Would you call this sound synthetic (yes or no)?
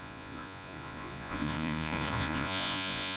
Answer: yes